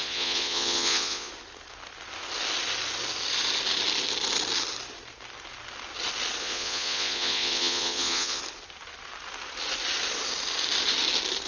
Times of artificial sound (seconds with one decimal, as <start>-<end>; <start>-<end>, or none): 0.0-1.3; 6.4-8.4